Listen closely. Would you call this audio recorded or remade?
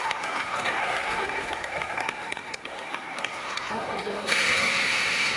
remade